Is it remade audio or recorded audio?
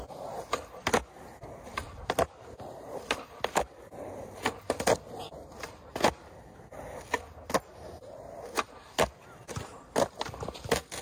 recorded